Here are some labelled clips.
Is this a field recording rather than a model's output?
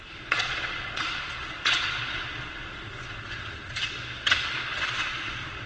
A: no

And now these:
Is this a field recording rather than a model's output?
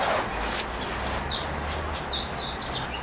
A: yes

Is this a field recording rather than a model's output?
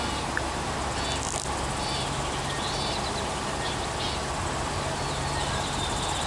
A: yes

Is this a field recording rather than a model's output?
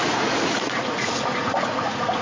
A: no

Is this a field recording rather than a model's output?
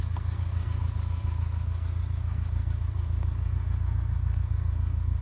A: no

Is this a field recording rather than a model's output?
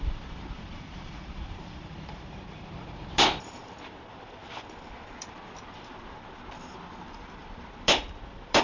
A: no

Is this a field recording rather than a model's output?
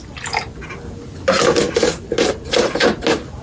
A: yes